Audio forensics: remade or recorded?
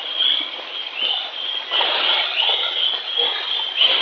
recorded